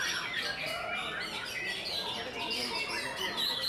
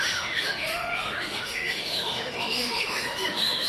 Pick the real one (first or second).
first